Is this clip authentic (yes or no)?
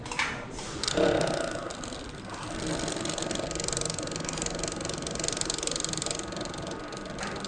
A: yes